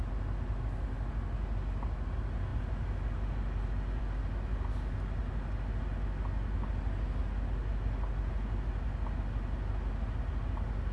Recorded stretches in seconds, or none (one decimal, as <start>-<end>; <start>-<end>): 0.0-10.9

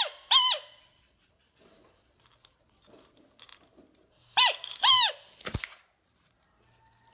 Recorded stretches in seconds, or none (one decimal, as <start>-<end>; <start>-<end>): 0.0-3.5; 5.1-7.1

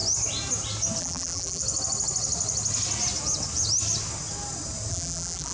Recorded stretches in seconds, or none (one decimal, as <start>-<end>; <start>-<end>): 0.0-1.0; 1.6-4.9